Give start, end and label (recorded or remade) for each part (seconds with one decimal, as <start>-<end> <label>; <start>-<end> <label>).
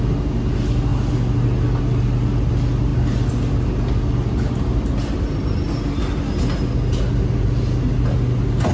0.0-8.7 recorded